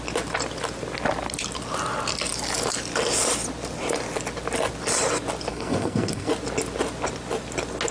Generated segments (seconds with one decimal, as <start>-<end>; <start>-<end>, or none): 5.5-6.3